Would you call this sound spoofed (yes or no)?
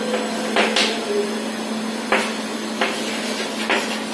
no